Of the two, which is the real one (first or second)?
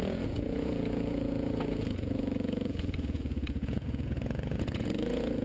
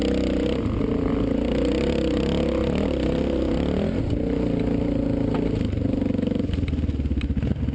second